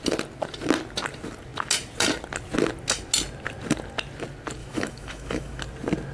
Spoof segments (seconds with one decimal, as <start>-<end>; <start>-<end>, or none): 4.6-5.6